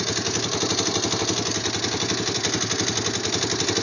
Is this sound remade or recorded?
recorded